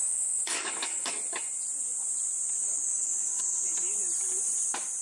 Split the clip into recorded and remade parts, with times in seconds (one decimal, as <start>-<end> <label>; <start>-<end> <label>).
0.0-1.1 remade; 1.1-2.6 recorded; 2.6-3.4 remade; 3.4-5.0 recorded